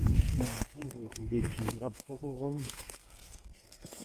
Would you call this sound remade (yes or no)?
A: yes